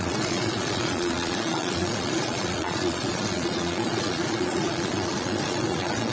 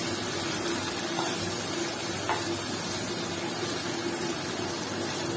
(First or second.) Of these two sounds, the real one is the second